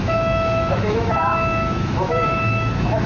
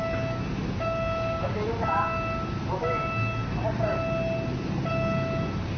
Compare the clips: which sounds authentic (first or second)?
second